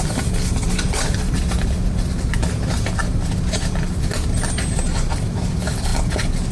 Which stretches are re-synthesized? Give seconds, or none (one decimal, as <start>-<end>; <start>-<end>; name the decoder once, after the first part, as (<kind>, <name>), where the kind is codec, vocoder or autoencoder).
none